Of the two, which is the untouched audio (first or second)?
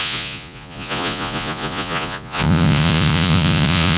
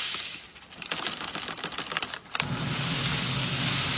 second